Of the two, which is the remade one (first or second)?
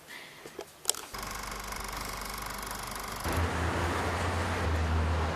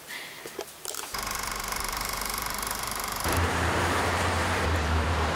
second